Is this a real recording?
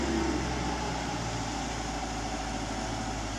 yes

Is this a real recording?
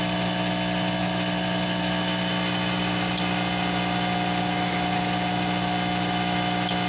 yes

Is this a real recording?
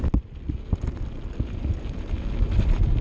yes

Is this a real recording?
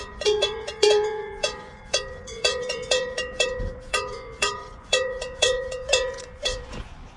no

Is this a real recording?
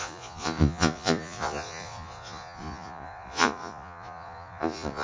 no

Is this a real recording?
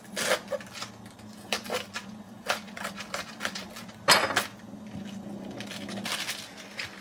yes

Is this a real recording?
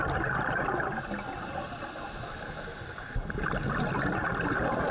yes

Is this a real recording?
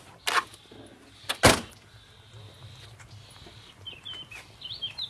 yes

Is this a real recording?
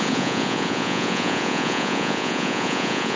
no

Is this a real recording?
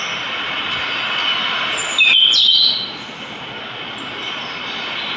yes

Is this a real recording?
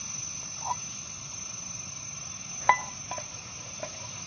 yes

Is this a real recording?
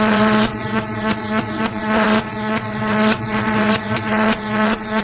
no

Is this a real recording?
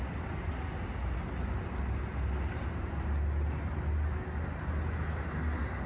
yes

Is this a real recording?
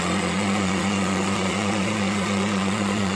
no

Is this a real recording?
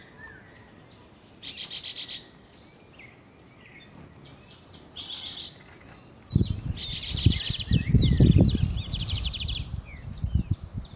yes